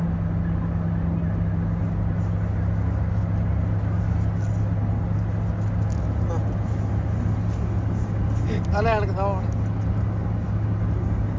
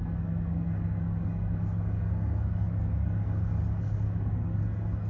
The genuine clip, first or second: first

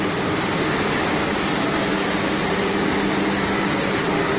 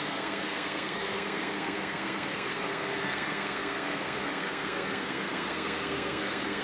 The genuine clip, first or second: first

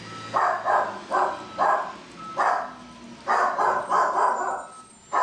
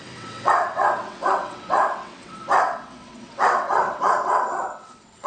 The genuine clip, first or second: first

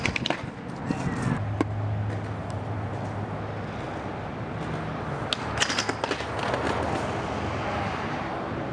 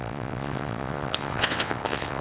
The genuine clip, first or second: first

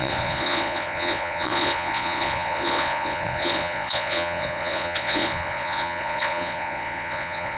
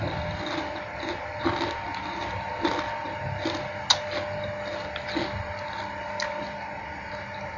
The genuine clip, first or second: second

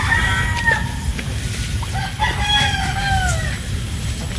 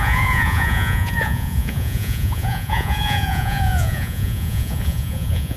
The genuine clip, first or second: first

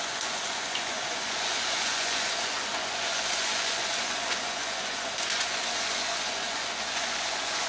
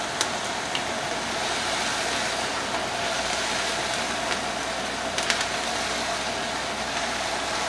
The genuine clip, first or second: second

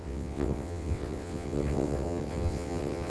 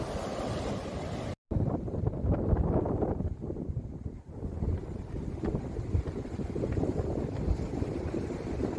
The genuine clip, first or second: second